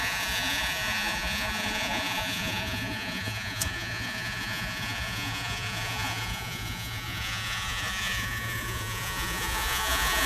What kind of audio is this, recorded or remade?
remade